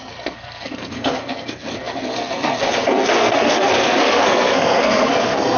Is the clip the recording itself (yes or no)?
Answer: no